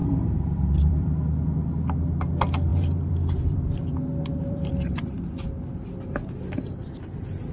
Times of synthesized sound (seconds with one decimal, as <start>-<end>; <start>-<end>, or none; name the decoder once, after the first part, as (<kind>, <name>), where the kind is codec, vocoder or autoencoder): 0.0-1.4 (vocoder, BigVGAN v2); 2.7-5.0